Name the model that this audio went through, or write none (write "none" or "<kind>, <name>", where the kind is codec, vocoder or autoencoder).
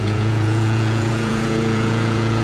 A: vocoder, Vocos